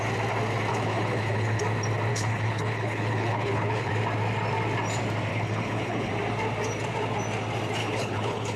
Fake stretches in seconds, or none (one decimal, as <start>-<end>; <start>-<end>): 0.7-1.6; 2.1-3.9; 5.3-6.1; 7.8-8.6